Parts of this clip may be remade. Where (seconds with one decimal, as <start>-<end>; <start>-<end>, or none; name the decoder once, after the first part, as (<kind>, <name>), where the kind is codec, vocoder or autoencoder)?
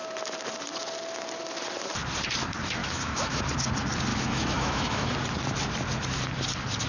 2.8-3.4 (autoencoder, DAC-VAE); 4.1-5.1